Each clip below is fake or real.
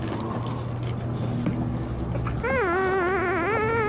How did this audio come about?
real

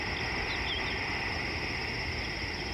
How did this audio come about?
real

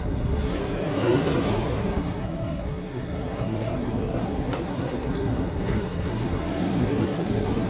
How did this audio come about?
fake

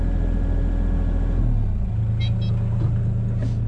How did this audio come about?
real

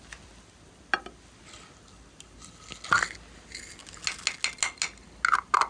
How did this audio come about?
real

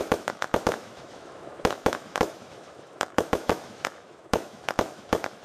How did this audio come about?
fake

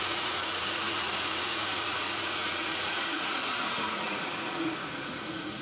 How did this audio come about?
fake